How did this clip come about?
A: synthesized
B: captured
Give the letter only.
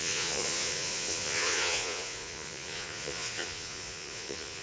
A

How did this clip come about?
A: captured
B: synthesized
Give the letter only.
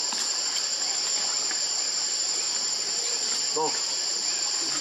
A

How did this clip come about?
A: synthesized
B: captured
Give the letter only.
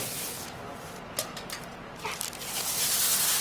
B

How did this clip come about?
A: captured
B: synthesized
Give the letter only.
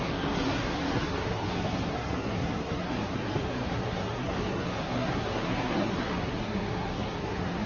B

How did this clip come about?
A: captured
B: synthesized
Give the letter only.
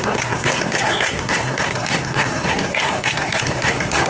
B